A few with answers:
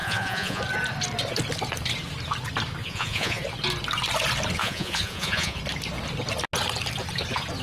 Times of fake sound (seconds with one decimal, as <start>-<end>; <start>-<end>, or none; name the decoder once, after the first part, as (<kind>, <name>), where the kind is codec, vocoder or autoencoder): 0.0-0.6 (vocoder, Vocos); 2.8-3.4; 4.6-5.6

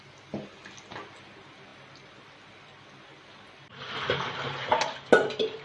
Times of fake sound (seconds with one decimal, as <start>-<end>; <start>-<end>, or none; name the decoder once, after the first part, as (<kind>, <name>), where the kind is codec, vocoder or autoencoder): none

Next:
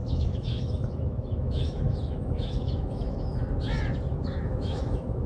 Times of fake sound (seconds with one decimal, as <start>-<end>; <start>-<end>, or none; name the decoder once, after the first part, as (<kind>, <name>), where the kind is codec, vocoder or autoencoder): 0.0-3.4 (autoencoder, DAC-VAE); 4.1-5.3